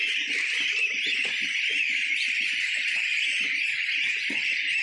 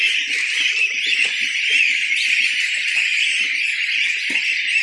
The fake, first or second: first